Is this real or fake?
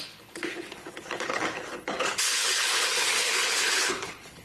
fake